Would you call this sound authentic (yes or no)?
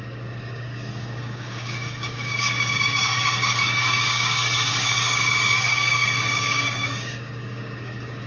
no